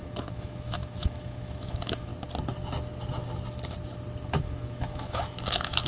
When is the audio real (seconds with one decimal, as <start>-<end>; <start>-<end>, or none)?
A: 2.1-4.4

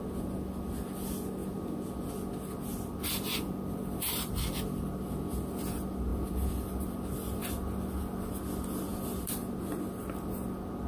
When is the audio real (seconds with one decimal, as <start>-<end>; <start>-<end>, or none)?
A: 0.0-2.7; 4.3-6.1; 8.3-8.9; 9.4-10.9

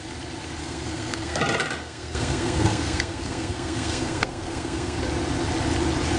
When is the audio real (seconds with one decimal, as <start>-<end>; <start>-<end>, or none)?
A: 0.0-0.6; 1.4-1.8; 5.0-6.2

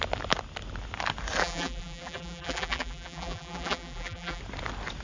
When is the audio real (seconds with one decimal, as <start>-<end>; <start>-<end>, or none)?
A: 0.0-1.4; 4.4-5.0

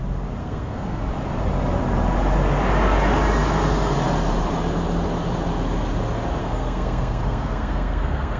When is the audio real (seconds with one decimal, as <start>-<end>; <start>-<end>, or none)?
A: 0.0-0.4; 1.0-6.4